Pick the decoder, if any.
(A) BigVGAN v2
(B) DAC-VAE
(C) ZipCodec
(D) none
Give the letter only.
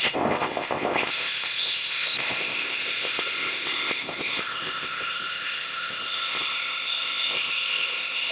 C